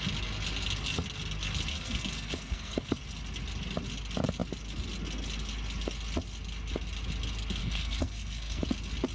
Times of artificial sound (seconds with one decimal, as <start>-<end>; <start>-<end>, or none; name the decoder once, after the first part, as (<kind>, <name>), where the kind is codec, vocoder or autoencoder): 1.7-3.0 (codec, SNAC); 7.6-8.7